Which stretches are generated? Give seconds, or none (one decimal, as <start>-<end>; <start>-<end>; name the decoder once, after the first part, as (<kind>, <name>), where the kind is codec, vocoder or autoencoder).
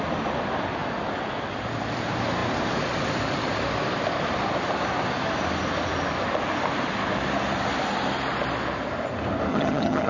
9.5-10.1 (vocoder, HiFi-GAN)